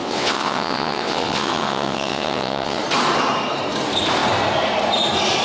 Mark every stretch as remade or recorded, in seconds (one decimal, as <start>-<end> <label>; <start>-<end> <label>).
0.0-2.8 remade; 2.8-5.4 recorded